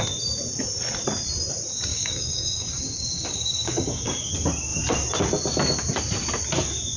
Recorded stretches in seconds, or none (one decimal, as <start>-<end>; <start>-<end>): 0.0-1.9; 4.3-7.0